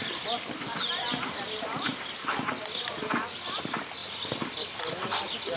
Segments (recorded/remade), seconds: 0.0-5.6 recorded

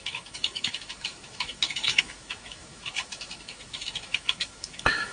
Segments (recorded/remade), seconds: 0.0-5.1 remade

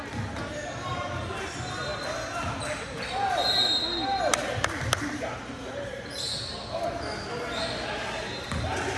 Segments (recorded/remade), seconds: 0.0-9.0 recorded

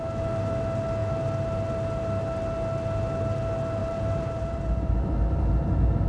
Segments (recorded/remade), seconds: 0.0-3.8 recorded; 3.8-4.9 remade; 4.9-6.1 recorded

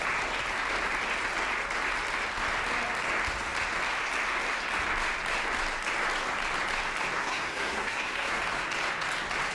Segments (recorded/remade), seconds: 0.0-7.2 recorded; 7.2-8.4 remade; 8.4-9.5 recorded

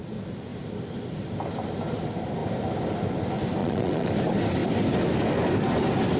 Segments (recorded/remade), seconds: 0.0-3.6 recorded; 3.6-4.1 remade; 4.1-6.2 recorded